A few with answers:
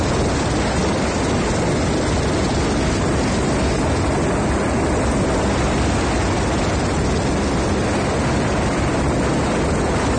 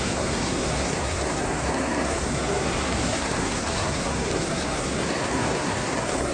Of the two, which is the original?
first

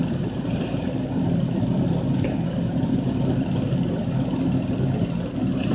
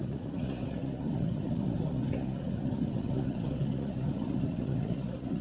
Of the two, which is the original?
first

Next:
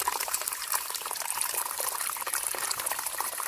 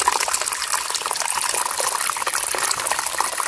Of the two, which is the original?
second